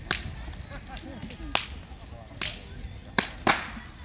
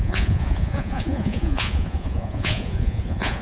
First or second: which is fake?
second